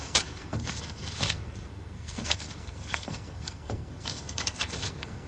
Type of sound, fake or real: fake